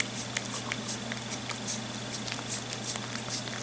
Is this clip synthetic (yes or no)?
no